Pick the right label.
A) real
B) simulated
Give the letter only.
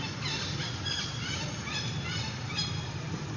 A